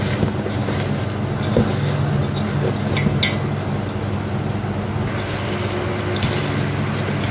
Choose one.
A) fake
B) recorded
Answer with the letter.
B